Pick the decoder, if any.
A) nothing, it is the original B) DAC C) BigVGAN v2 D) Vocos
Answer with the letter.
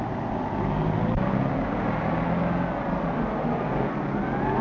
A